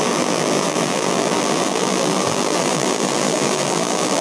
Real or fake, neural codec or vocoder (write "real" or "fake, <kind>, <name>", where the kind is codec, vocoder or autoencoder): fake, vocoder, BigVGAN v2